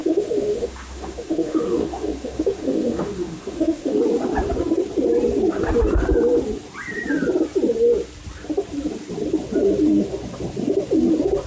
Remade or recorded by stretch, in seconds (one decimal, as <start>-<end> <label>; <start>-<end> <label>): 0.0-4.0 remade; 4.0-11.5 recorded